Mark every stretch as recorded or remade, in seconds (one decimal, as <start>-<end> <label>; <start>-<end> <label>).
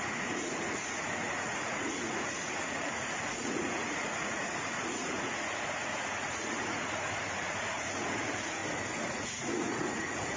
0.0-8.6 remade; 8.6-9.1 recorded; 9.1-10.4 remade